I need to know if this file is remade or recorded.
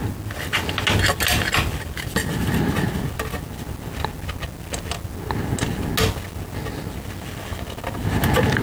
recorded